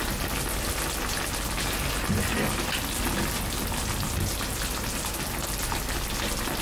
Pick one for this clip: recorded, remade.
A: recorded